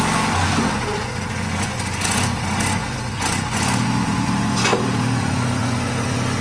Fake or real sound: fake